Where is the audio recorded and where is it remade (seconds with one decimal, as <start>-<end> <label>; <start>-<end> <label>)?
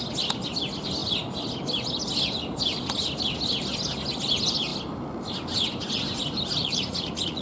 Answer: 0.0-6.6 recorded; 6.6-7.4 remade